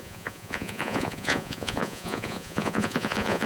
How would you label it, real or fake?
fake